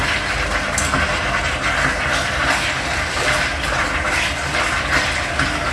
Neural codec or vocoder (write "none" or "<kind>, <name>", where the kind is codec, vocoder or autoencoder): none